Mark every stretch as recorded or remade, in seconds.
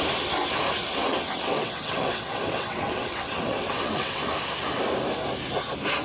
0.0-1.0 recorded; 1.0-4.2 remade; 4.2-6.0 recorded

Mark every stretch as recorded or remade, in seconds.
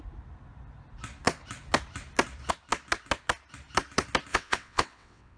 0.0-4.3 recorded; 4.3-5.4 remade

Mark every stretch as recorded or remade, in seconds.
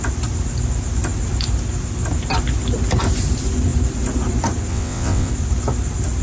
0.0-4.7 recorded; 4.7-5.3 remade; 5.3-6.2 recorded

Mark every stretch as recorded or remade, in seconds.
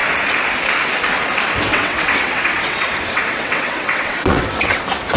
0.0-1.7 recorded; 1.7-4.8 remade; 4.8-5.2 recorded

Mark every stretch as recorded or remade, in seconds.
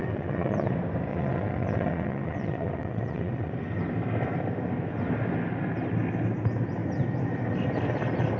0.0-0.7 remade; 0.7-1.1 recorded; 1.1-3.5 remade; 3.5-8.4 recorded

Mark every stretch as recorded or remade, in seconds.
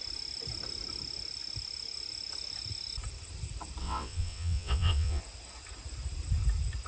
0.0-3.8 recorded; 3.8-5.2 remade; 5.2-6.9 recorded